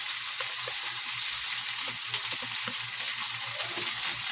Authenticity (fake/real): real